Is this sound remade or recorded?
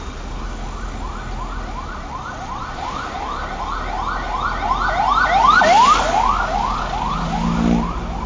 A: recorded